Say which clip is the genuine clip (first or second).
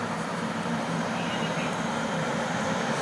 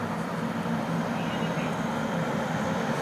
second